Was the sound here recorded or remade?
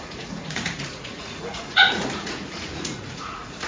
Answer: remade